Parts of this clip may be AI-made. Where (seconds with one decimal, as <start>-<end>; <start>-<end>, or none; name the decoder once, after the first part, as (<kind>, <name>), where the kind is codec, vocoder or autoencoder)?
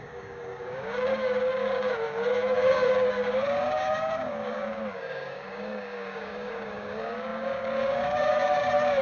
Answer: 0.0-9.0 (codec, DAC)